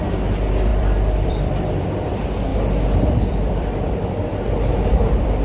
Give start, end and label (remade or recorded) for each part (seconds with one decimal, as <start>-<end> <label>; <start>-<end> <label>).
0.0-5.4 remade

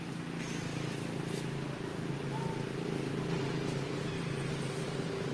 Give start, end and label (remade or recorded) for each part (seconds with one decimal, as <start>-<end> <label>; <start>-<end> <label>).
0.0-1.9 recorded; 1.9-2.4 remade; 2.4-5.3 recorded

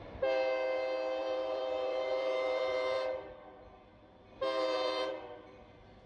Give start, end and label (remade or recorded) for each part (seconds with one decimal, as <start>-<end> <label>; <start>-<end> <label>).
0.0-1.2 recorded; 1.2-3.3 remade; 3.3-3.9 recorded; 3.9-5.1 remade; 5.1-6.1 recorded

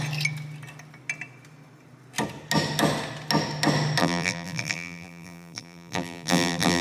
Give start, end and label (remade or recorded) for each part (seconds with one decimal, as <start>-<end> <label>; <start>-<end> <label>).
0.0-4.0 recorded; 4.0-6.8 remade